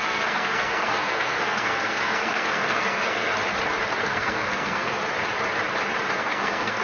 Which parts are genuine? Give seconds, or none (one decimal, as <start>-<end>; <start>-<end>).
3.3-4.0; 5.0-6.1